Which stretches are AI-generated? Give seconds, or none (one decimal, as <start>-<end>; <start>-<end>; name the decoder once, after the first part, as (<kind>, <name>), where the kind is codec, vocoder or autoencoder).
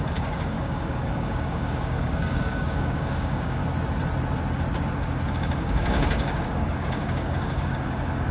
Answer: 0.0-3.6 (codec, DAC); 5.3-8.3